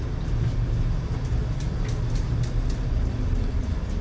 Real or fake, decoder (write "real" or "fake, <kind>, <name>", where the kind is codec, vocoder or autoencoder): real